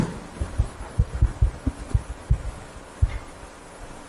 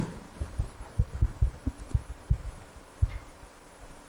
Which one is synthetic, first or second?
second